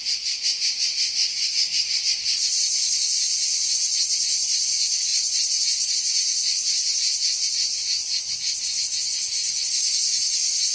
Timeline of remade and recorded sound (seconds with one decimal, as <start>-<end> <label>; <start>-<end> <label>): 0.0-1.3 recorded; 1.3-2.0 remade; 2.0-10.7 recorded